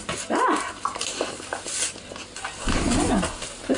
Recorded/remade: recorded